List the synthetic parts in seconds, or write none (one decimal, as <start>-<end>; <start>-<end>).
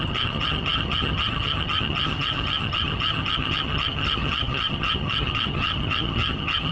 0.0-6.7